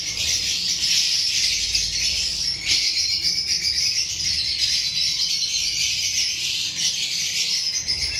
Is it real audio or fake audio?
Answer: real